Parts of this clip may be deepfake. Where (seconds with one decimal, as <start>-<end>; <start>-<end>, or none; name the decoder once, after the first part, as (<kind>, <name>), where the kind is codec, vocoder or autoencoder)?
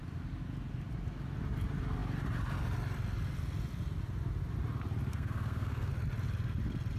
5.1-5.9 (codec, SNAC)